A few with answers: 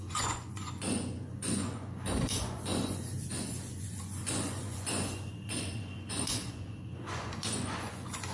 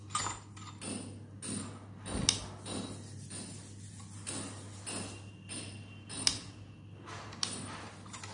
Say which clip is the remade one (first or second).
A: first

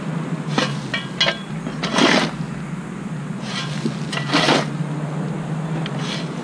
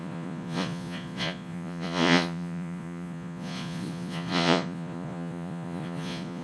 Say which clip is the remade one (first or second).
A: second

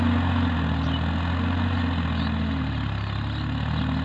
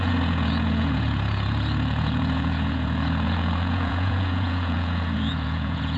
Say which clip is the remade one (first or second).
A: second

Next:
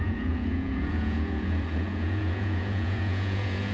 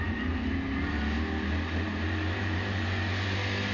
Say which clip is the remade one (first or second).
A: first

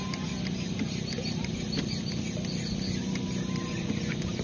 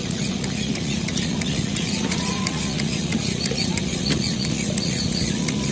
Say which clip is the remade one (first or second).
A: second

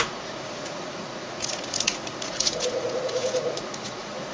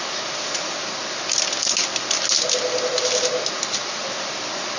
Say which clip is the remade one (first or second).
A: first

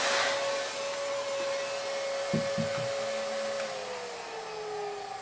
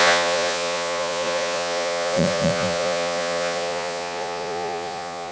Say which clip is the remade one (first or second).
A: second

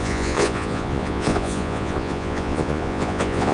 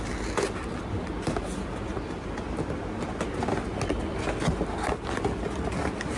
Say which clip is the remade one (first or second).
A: first